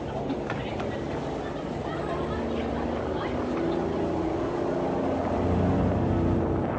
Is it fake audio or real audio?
real